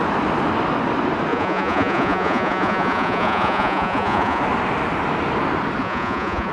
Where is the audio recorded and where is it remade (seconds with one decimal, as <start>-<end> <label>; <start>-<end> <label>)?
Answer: 0.0-1.3 recorded; 1.3-4.4 remade; 4.4-5.8 recorded; 5.8-6.5 remade